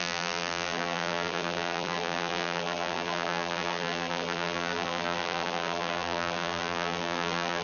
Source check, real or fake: fake